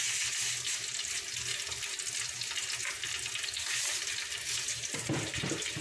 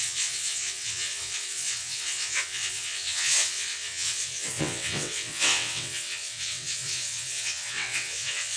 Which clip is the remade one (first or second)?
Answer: second